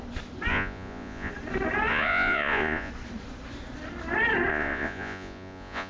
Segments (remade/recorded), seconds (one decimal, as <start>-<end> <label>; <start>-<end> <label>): 0.0-0.5 recorded; 0.5-1.3 remade; 1.3-1.9 recorded; 1.9-2.9 remade; 2.9-4.5 recorded; 4.5-5.9 remade